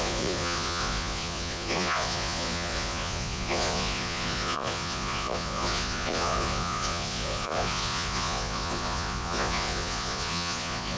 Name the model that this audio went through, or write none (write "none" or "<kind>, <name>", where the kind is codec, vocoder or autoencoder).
vocoder, Vocos